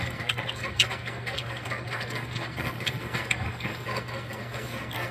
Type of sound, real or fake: fake